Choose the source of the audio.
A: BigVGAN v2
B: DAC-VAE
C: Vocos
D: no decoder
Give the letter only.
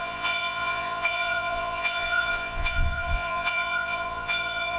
C